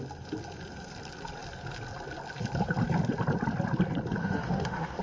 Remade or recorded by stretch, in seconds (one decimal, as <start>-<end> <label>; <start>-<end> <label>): 0.0-4.2 recorded; 4.2-5.0 remade